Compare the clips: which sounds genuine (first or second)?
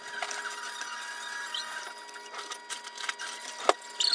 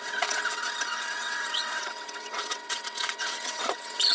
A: first